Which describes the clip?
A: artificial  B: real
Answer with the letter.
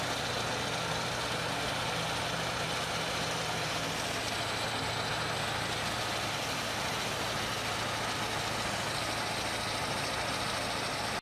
B